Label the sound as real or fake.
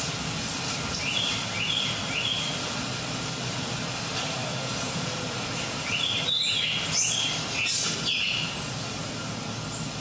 real